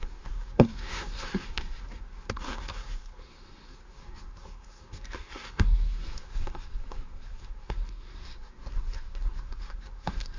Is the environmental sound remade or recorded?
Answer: remade